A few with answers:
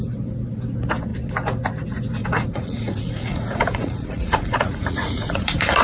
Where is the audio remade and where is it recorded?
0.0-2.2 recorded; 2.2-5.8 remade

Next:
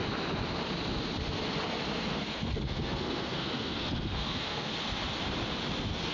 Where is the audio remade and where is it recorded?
0.0-2.1 recorded; 2.1-4.7 remade; 4.7-6.1 recorded

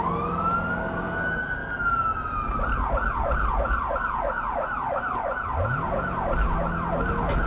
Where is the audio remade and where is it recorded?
0.0-7.5 recorded

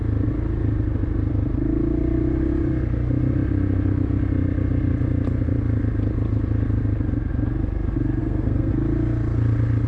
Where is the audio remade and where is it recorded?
0.0-8.2 recorded; 8.2-8.7 remade; 8.7-9.9 recorded

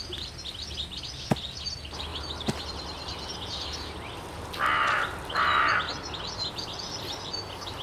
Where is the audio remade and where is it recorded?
0.0-7.8 recorded

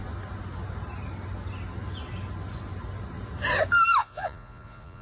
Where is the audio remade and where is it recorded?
0.0-4.0 recorded; 4.0-5.0 remade

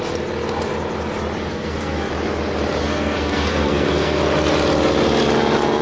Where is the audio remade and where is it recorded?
0.0-1.5 recorded; 1.5-2.1 remade; 2.1-2.8 recorded; 2.8-4.2 remade; 4.2-5.8 recorded

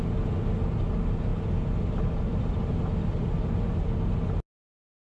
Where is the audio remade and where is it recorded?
0.0-5.0 recorded